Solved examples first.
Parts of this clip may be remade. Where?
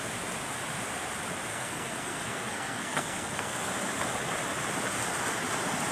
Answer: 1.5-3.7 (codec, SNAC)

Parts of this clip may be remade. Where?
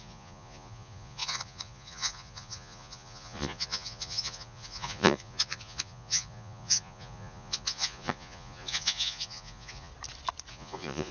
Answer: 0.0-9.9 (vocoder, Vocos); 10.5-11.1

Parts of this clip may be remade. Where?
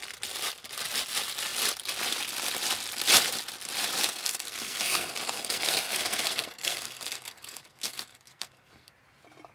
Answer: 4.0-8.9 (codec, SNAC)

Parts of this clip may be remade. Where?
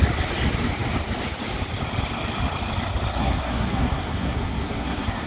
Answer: 3.2-5.3 (codec, SNAC)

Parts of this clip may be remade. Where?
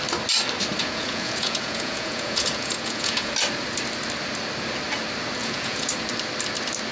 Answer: 0.8-3.3 (vocoder, Vocos); 5.4-5.9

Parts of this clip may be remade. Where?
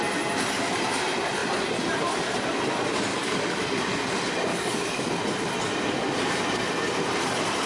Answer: 3.1-3.8 (codec, DAC); 4.5-5.1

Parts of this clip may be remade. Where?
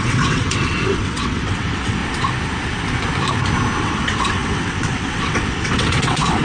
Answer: 0.0-2.0 (vocoder, WaveNeXt); 3.8-6.4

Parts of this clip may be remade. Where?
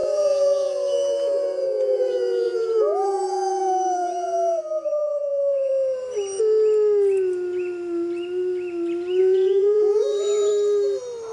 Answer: 0.0-5.7 (vocoder, Vocos); 9.2-10.5